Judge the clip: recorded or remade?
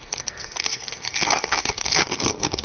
remade